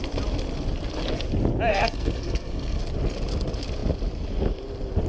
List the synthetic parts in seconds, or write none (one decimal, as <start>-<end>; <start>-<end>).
1.7-2.8